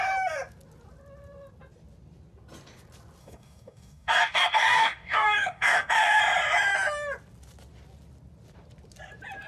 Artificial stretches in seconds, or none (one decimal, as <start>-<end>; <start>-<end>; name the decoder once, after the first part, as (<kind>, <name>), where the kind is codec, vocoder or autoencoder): 3.2-6.2 (codec, DAC)